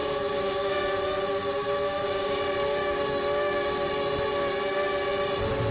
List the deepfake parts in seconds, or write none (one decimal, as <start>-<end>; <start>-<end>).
0.0-0.7; 1.4-2.4; 2.8-3.9